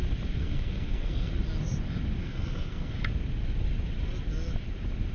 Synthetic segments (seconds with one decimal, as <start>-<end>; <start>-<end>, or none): 0.4-1.3; 2.2-2.9